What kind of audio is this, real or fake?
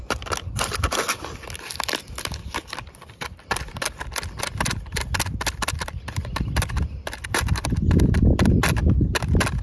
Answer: real